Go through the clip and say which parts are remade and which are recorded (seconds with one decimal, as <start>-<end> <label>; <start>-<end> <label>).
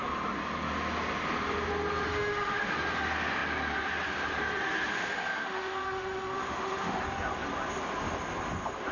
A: 0.0-2.1 recorded; 2.1-2.7 remade; 2.7-4.9 recorded; 4.9-7.0 remade; 7.0-8.9 recorded